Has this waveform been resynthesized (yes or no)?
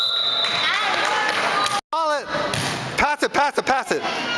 no